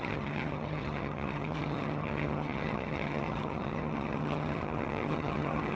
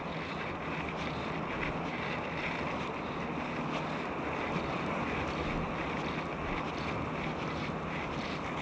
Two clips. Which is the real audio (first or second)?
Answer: second